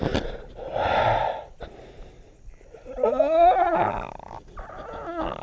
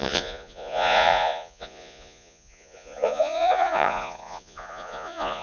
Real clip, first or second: first